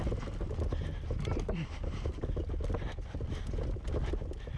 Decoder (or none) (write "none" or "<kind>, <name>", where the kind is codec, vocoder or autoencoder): none